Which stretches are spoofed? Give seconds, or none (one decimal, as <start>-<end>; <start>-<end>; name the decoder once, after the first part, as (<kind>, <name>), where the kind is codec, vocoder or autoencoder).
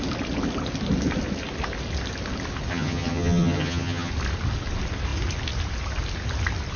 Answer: 2.7-4.1 (vocoder, HiFi-GAN)